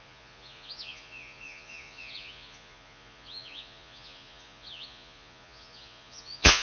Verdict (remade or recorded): remade